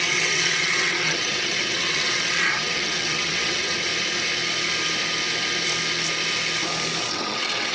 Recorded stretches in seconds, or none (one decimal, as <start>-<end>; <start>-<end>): 3.9-7.0